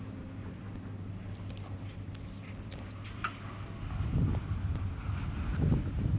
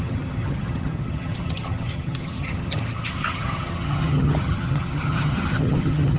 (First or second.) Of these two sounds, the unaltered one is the first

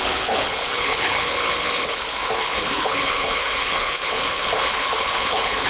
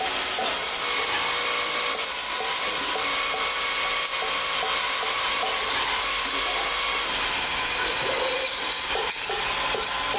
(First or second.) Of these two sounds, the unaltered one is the second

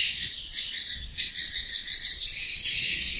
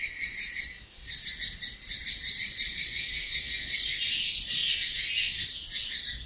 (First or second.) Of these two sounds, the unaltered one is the second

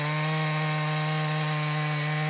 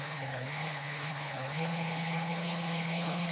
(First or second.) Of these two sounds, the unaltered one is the first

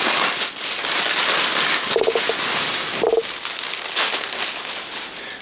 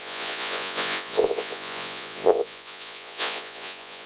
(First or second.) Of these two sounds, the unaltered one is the first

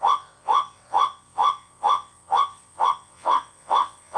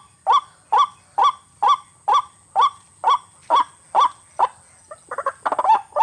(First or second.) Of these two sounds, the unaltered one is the second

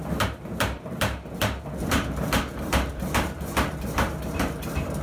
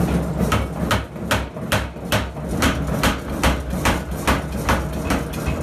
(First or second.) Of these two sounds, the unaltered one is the second